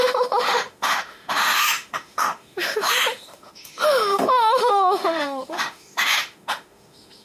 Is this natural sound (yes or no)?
no